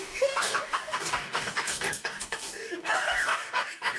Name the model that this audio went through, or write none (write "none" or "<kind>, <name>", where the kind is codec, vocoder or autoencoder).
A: codec, DAC